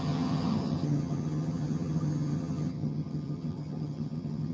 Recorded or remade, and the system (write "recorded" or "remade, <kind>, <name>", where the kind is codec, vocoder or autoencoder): remade, vocoder, HiFi-GAN